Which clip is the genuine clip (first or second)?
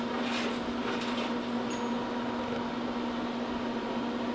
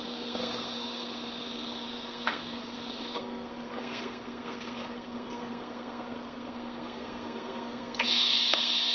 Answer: first